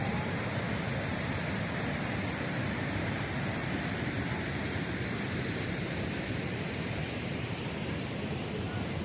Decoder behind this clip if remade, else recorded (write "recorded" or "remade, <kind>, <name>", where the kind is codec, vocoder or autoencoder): remade, vocoder, BigVGAN v2